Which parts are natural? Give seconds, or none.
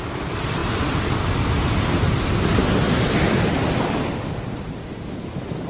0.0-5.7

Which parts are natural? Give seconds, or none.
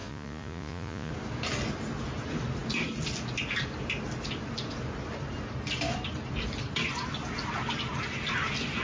1.1-8.8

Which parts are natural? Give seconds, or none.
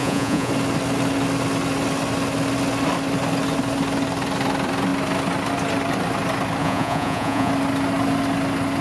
0.5-6.6; 7.5-8.8